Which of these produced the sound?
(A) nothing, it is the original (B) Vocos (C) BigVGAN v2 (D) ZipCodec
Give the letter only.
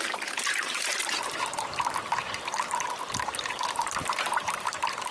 C